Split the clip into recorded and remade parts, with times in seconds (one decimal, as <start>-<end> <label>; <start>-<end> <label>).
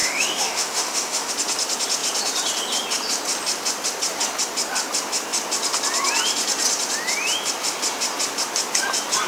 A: 0.0-1.3 remade; 1.3-9.3 recorded